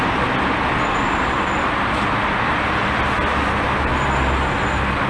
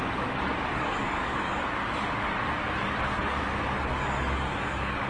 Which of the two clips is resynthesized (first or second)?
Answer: second